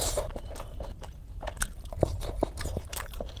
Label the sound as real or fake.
fake